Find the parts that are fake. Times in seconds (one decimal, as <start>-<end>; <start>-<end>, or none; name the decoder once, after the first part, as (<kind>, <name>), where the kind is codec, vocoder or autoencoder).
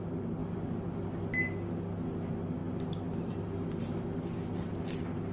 0.4-1.2 (vocoder, BigVGAN v2); 2.6-4.5